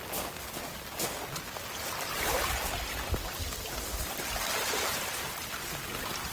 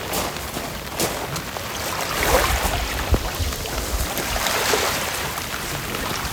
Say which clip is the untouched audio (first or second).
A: first